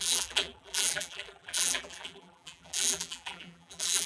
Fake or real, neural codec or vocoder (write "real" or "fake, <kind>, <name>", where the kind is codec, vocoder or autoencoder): fake, vocoder, BigVGAN v2